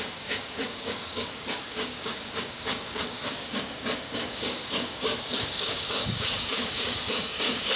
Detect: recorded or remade remade